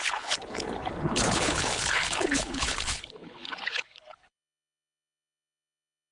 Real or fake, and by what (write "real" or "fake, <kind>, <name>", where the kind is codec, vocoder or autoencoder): fake, codec, HILCodec